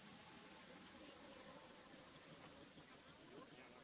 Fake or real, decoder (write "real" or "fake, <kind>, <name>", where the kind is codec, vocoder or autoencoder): real